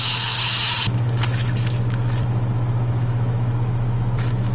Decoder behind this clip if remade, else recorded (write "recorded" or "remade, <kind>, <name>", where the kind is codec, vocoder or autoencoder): remade, autoencoder, DAC-VAE